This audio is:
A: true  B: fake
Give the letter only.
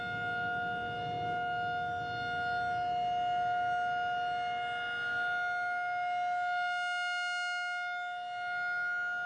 A